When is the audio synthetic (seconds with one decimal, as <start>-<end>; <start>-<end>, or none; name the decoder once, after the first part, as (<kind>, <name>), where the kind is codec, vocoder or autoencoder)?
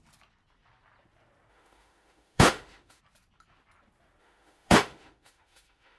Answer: 1.5-3.0 (autoencoder, DAC-VAE); 4.2-6.0